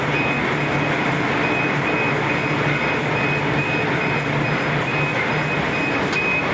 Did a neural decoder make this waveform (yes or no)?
no